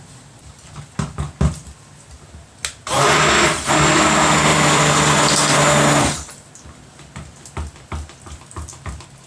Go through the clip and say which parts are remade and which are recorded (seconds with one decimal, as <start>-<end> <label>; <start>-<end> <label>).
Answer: 0.0-4.5 recorded; 4.5-5.0 remade; 5.0-9.3 recorded